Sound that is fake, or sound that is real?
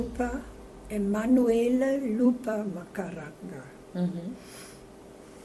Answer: fake